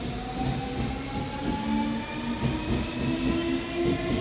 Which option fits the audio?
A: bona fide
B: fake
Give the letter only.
A